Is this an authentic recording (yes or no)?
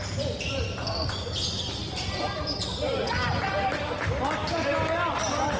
yes